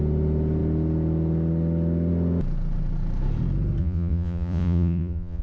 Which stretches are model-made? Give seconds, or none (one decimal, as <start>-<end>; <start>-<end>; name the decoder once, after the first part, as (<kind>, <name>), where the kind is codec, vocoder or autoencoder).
3.8-5.4 (vocoder, Vocos)